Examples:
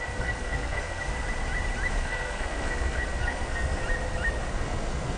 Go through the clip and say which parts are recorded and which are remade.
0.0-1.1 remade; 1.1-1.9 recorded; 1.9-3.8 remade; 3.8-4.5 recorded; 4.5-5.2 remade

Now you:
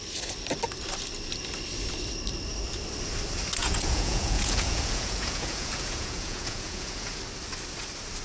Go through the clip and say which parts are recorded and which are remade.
0.0-3.6 recorded; 3.6-7.2 remade; 7.2-8.2 recorded

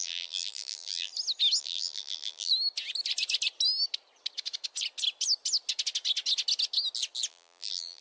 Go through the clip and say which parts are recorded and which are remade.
0.0-1.1 remade; 1.1-1.6 recorded; 1.6-2.5 remade; 2.5-7.3 recorded; 7.3-8.0 remade

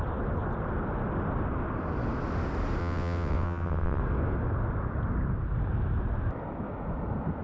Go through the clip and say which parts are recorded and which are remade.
0.0-2.8 recorded; 2.8-4.0 remade; 4.0-7.4 recorded

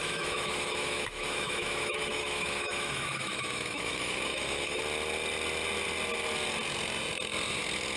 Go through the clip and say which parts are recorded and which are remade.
0.0-4.8 remade; 4.8-8.0 recorded

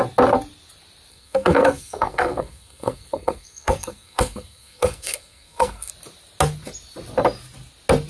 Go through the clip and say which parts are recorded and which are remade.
0.0-1.1 recorded; 1.1-5.9 remade; 5.9-8.1 recorded